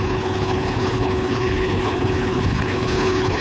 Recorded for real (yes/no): no